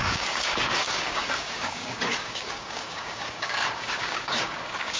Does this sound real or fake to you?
fake